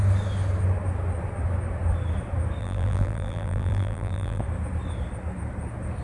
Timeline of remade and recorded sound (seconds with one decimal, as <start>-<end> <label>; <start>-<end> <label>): 0.0-2.6 recorded; 2.6-4.4 remade; 4.4-6.0 recorded